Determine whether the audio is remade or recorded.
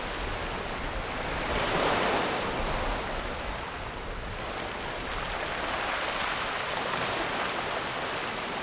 recorded